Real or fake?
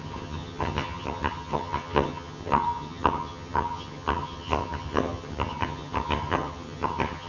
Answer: fake